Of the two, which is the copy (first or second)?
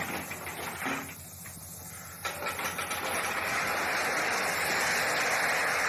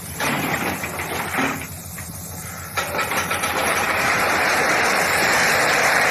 second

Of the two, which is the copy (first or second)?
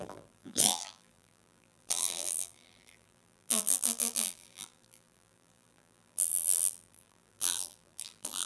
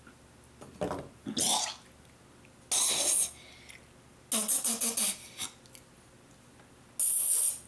first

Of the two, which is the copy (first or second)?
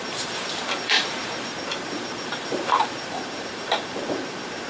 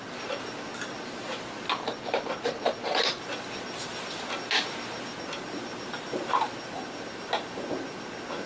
first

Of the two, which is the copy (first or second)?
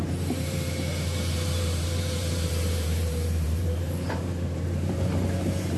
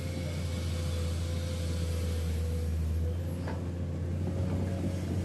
first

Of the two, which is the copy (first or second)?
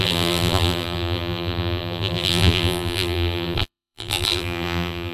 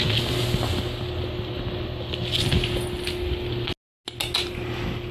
first